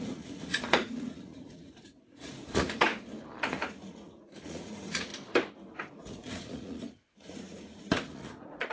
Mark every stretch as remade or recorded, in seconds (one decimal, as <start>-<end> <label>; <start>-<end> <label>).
0.0-2.9 remade; 2.9-3.5 recorded; 3.5-5.1 remade; 5.1-5.9 recorded; 5.9-8.7 remade

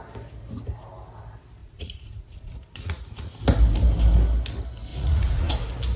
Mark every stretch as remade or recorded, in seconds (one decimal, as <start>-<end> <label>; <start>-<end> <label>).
0.0-1.6 recorded; 1.6-3.3 remade; 3.3-4.9 recorded; 4.9-5.5 remade; 5.5-6.0 recorded

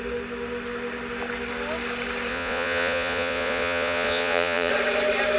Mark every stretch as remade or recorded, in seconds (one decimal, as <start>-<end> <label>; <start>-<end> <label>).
0.0-2.3 recorded; 2.3-4.7 remade; 4.7-5.4 recorded

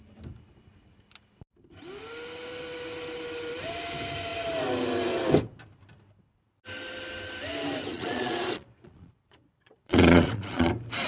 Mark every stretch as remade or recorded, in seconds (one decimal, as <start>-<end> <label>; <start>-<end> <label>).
0.0-7.9 recorded; 7.9-10.7 remade; 10.7-11.1 recorded

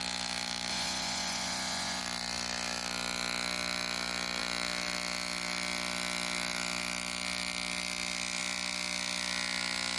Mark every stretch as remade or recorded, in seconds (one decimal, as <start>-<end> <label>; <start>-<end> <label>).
0.0-0.7 recorded; 0.7-2.0 remade; 2.0-10.0 recorded

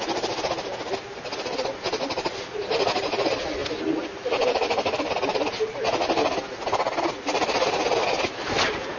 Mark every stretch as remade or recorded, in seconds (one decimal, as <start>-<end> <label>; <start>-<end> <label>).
0.0-9.0 recorded